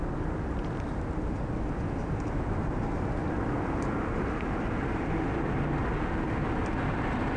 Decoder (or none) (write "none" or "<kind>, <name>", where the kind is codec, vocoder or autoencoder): none